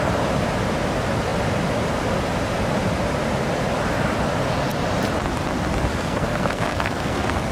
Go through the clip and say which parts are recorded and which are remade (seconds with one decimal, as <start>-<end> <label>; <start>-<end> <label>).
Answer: 0.0-5.9 recorded; 5.9-7.5 remade